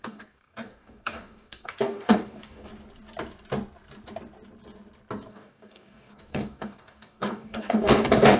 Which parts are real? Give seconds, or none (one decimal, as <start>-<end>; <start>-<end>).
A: 2.7-5.3